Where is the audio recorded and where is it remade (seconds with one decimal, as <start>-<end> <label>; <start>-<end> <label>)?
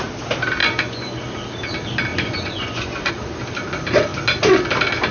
0.0-0.6 recorded; 0.6-1.2 remade; 1.2-2.1 recorded; 2.1-3.1 remade; 3.1-5.1 recorded